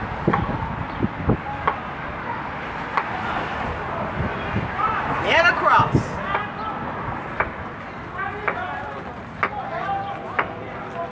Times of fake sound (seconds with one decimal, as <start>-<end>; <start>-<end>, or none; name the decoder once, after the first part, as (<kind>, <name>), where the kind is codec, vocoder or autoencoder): 4.3-5.1 (vocoder, BigVGAN v2)